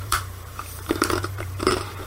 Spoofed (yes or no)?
yes